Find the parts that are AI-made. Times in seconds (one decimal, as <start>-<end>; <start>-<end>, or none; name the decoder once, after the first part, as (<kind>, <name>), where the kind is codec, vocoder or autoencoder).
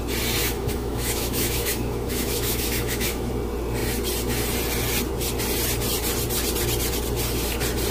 0.4-3.3 (autoencoder, DAC-VAE)